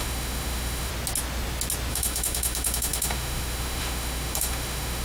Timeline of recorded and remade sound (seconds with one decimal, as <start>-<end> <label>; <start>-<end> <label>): 0.0-0.9 remade; 0.9-1.9 recorded; 1.9-5.0 remade

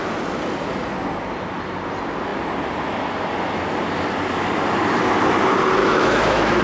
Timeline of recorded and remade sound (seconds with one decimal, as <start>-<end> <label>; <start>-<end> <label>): 0.0-5.8 recorded; 5.8-6.6 remade